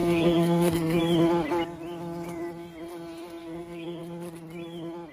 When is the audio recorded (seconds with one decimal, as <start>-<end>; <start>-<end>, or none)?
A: 1.0-3.4; 4.0-5.1

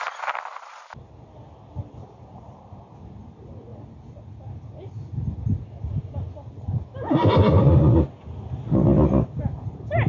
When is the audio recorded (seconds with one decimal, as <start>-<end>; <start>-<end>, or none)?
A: 0.0-10.1

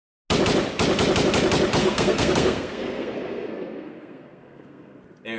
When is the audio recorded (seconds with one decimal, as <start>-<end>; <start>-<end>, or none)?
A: 0.0-1.8; 5.0-5.4

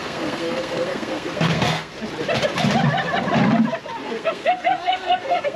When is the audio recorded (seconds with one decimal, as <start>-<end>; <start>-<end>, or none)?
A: 1.9-4.0

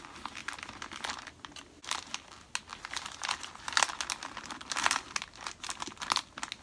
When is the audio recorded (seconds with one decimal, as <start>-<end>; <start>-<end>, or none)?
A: 0.0-6.6

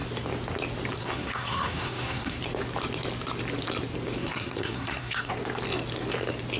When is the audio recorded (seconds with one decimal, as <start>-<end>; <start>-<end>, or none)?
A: 0.0-1.0; 2.4-4.2; 5.3-6.6

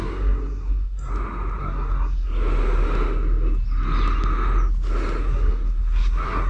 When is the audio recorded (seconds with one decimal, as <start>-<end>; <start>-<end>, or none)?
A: 1.1-1.6; 2.3-5.2